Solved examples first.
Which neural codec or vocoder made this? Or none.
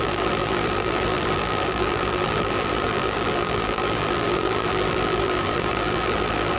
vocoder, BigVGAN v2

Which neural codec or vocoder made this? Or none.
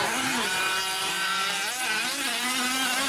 vocoder, BigVGAN v2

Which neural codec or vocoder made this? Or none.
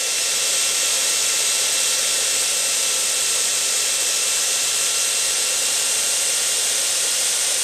vocoder, BigVGAN v2